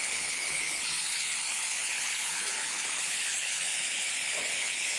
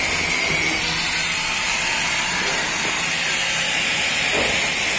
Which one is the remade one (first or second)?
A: first